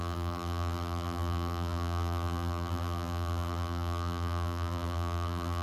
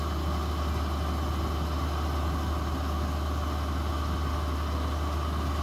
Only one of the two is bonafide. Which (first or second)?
second